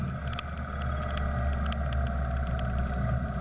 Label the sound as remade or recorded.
recorded